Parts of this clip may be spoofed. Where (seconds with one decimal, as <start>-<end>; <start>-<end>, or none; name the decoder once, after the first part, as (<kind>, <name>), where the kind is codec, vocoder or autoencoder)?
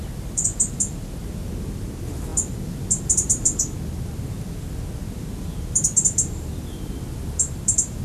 0.0-8.0 (vocoder, BigVGAN v2)